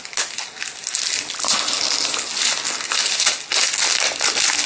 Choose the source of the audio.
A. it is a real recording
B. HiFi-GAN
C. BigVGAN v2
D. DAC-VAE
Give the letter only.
A